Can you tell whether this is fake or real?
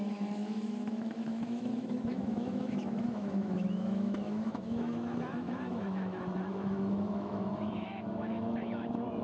fake